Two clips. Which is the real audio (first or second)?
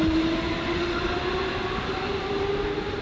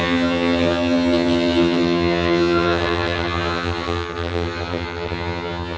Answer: first